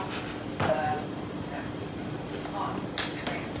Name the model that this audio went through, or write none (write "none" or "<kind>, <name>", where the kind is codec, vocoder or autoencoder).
none